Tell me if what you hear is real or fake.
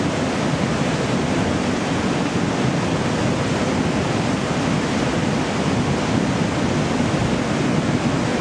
real